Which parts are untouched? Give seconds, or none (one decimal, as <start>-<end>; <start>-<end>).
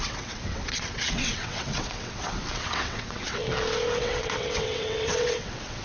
3.4-4.0